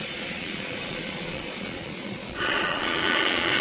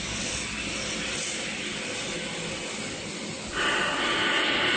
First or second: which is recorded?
second